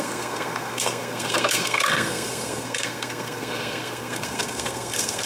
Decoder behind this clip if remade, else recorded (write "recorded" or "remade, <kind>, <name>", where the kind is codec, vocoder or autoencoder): remade, codec, SNAC